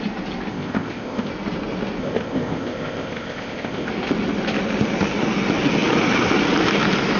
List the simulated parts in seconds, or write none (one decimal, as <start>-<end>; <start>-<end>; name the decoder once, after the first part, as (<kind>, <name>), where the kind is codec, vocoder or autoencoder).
0.5-1.3 (codec, ZipCodec); 2.0-3.9